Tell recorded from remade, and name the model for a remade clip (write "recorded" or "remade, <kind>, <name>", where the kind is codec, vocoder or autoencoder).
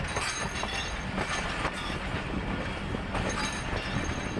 recorded